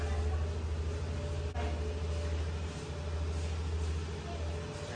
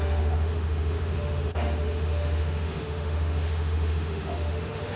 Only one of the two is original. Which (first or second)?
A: first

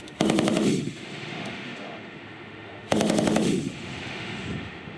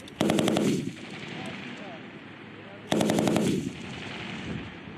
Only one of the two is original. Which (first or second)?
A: second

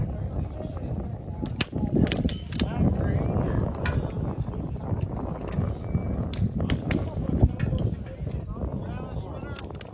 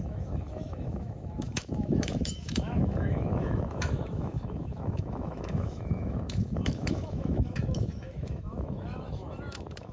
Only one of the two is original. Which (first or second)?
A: first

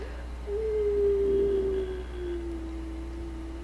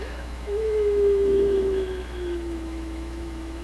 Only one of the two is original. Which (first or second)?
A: first